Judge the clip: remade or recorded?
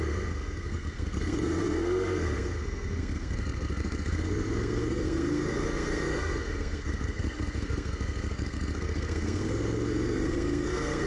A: remade